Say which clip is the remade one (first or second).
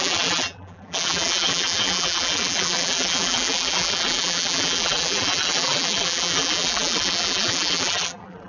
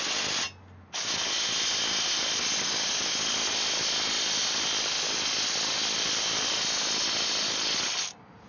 first